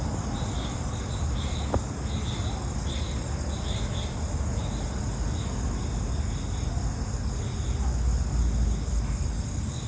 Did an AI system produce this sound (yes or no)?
no